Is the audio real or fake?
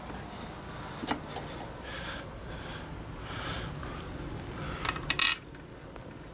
real